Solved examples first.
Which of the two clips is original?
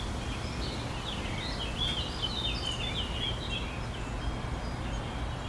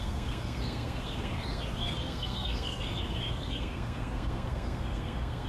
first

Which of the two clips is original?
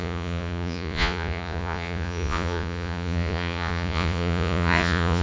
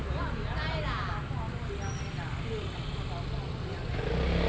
second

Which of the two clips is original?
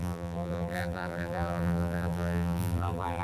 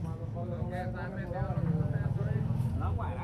second